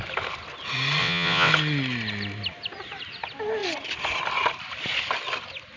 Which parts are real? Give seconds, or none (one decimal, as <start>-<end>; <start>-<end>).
0.0-1.0; 1.5-5.8